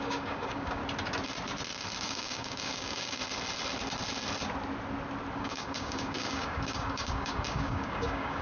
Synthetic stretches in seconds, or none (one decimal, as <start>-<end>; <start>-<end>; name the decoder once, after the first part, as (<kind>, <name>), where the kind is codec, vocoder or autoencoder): 0.0-0.8 (codec, DAC); 2.0-3.2; 5.4-8.4